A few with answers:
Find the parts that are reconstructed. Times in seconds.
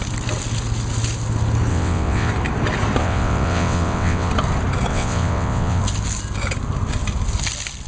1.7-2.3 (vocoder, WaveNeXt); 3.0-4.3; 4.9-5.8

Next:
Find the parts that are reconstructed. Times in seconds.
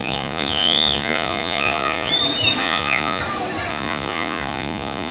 0.0-2.1 (vocoder, Vocos); 2.6-3.2; 3.7-5.1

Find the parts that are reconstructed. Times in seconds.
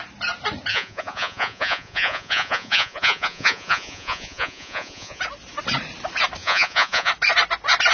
0.7-5.2 (vocoder, Vocos); 6.4-7.1